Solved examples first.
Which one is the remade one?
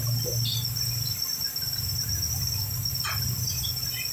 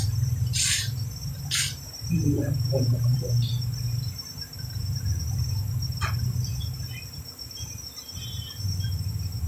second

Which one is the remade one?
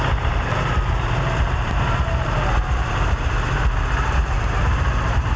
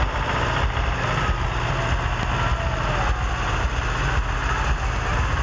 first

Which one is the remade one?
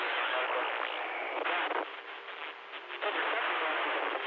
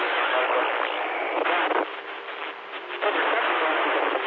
second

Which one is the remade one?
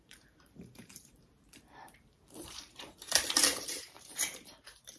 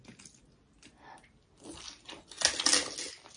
first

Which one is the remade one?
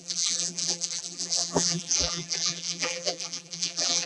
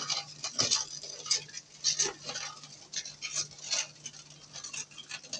first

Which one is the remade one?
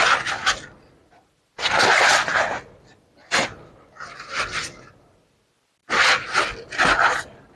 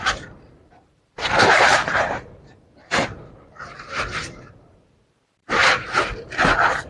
second